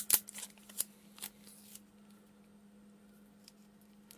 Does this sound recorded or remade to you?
recorded